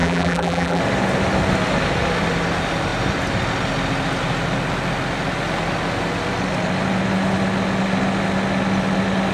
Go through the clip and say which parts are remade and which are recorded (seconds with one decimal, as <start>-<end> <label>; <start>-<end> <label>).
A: 0.0-0.8 remade; 0.8-9.3 recorded